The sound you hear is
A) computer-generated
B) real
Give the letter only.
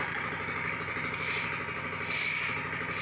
B